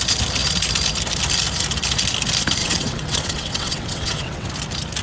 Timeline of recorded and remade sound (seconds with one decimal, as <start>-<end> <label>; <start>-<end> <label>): 0.0-2.6 recorded; 2.6-4.5 remade; 4.5-5.0 recorded